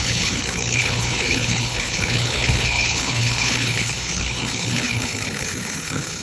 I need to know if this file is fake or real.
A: fake